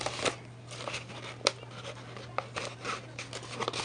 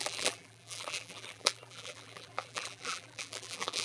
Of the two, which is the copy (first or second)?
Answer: second